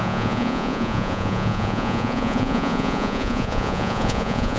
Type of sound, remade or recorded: remade